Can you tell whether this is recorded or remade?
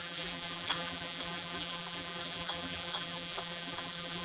remade